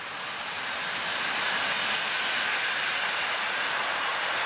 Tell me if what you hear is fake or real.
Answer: real